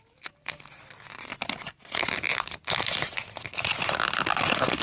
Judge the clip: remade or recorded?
recorded